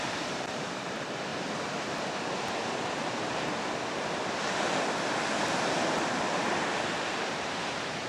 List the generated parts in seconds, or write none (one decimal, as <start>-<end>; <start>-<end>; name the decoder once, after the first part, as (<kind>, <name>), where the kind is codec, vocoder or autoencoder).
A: 0.0-1.3 (vocoder, BigVGAN v2); 6.2-8.1

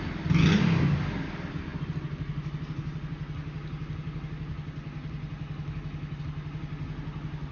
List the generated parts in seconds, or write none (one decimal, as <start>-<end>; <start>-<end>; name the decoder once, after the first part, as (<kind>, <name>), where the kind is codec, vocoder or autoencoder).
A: none

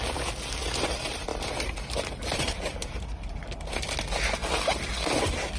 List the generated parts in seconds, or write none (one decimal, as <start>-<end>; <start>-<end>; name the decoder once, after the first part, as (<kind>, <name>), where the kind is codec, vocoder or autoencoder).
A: 1.3-3.9 (vocoder, BigVGAN v2)

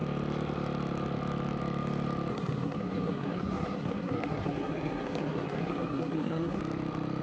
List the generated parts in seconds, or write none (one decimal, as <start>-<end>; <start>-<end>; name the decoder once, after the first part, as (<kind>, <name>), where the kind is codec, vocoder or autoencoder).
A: 2.3-6.6 (codec, SNAC)

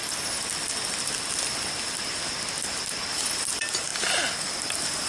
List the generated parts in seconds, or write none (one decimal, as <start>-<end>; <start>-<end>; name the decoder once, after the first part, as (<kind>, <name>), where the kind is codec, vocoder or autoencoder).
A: none

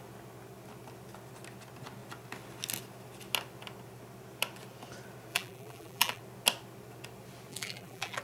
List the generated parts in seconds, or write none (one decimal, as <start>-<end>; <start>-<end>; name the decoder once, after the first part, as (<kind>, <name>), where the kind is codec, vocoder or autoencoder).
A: 5.3-6.2 (vocoder, BigVGAN v2); 7.5-8.2

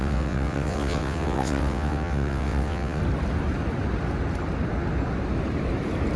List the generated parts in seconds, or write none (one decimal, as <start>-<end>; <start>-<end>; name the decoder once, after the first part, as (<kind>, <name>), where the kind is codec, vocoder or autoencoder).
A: 0.0-3.0 (vocoder, WaveNeXt)